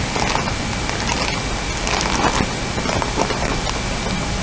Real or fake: real